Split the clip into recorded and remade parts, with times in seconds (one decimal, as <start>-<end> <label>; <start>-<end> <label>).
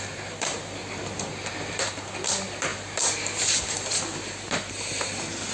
0.0-5.5 recorded